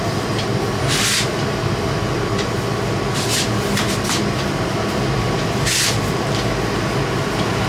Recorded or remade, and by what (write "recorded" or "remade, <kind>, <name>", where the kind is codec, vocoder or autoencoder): recorded